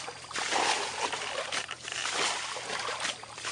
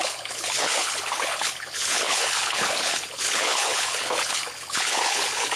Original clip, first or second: first